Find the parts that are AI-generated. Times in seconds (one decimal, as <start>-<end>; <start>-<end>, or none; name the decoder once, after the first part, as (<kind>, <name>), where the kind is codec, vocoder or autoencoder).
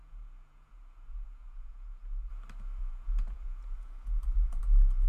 0.0-2.3 (vocoder, Vocos); 2.8-4.6